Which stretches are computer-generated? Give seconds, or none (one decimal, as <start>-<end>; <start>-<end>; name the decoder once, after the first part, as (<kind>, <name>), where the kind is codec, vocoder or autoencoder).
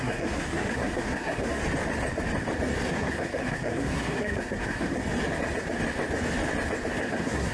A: 0.0-1.6 (codec, SNAC); 2.9-5.0; 7.0-7.5